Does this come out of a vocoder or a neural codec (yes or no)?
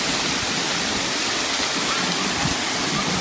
no